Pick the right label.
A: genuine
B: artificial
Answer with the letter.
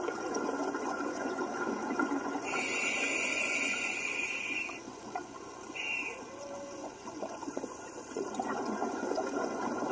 B